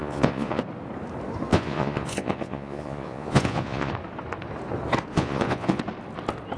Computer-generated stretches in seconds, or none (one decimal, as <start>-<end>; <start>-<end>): 0.0-0.6; 1.5-3.9; 5.1-5.8